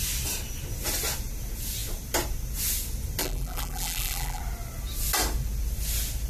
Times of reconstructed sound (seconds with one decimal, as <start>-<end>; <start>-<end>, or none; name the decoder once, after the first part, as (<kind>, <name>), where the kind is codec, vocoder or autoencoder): 3.2-4.4 (vocoder, BigVGAN v2)